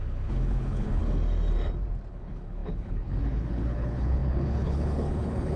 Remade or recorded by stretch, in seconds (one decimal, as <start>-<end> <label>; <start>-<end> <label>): 0.0-1.0 remade; 1.0-2.1 recorded; 2.1-5.6 remade